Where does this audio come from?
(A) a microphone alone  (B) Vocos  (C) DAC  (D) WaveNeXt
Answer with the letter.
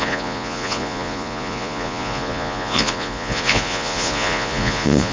B